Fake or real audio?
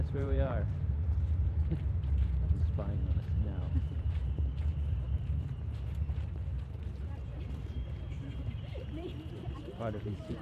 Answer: fake